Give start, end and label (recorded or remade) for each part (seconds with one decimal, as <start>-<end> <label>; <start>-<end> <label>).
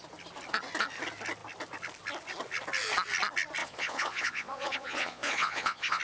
0.0-3.6 recorded; 3.6-6.0 remade